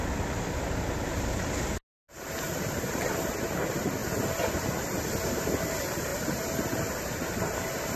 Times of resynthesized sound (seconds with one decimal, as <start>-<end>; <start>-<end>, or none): none